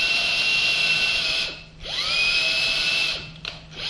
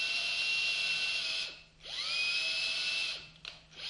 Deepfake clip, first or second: first